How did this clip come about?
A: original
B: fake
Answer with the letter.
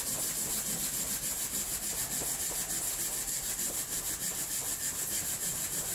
A